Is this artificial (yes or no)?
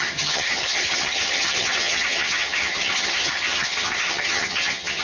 yes